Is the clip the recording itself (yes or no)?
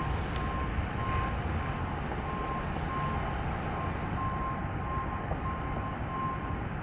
yes